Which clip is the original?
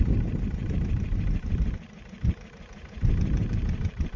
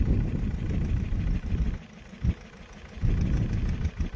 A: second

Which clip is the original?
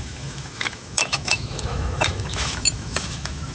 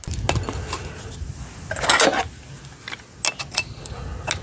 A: second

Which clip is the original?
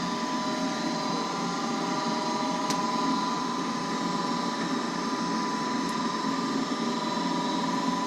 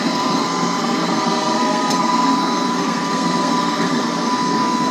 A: first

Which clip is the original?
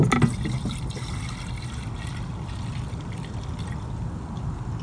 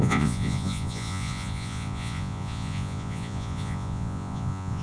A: first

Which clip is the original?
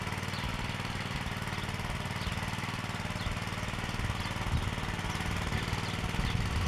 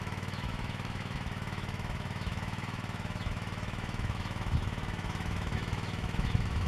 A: first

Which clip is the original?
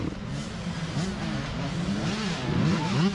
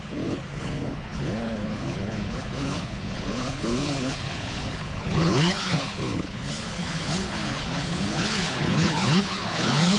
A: first